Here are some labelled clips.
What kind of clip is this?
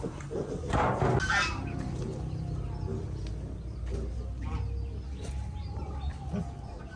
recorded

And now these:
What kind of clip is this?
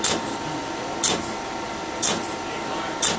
recorded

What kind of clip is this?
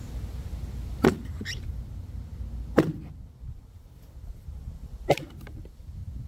remade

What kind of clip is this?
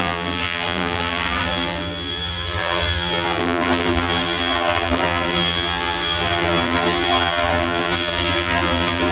remade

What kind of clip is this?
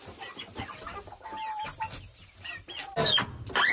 recorded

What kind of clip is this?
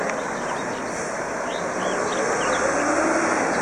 recorded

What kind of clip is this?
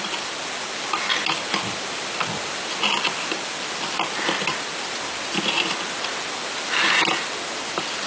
recorded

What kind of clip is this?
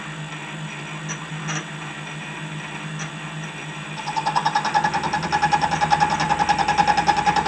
recorded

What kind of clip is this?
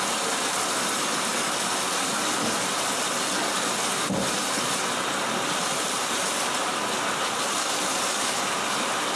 recorded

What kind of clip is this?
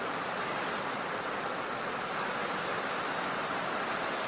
recorded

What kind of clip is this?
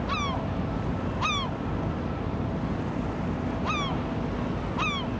recorded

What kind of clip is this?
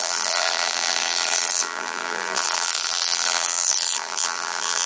remade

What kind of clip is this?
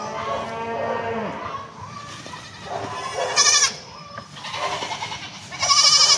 recorded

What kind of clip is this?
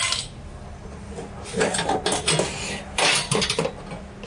recorded